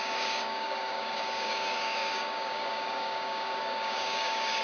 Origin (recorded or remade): remade